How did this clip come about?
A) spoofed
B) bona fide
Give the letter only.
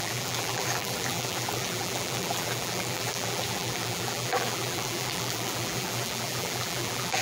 A